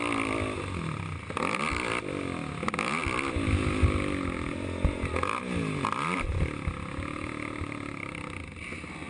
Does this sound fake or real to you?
real